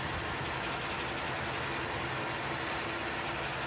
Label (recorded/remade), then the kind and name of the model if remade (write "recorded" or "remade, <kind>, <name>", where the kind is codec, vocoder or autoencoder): recorded